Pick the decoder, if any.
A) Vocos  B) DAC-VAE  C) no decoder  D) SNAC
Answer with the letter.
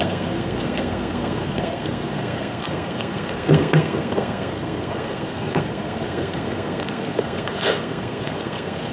D